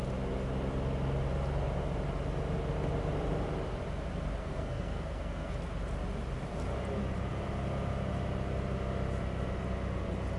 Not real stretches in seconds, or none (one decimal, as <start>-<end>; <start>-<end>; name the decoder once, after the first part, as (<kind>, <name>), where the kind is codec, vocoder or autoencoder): 4.4-5.5 (codec, SNAC)